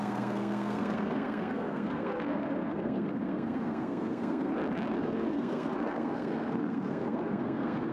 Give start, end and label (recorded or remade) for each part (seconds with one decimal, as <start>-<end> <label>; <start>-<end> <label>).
0.0-4.5 remade; 4.5-5.0 recorded; 5.0-7.9 remade